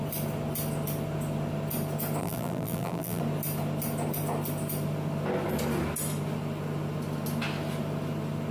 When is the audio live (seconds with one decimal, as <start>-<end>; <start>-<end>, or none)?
0.0-2.2; 3.2-8.5